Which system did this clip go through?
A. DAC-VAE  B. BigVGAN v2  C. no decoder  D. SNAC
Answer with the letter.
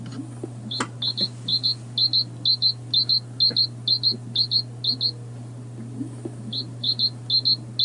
C